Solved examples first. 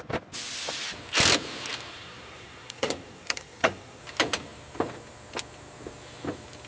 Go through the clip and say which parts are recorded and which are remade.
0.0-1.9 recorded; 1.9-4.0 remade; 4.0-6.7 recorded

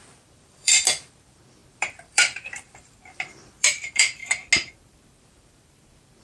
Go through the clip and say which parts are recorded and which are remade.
0.0-4.2 remade; 4.2-4.7 recorded; 4.7-6.2 remade

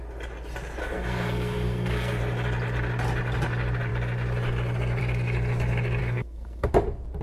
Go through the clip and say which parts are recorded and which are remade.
0.0-0.8 recorded; 0.8-2.2 remade; 2.2-6.0 recorded; 6.0-6.7 remade; 6.7-7.2 recorded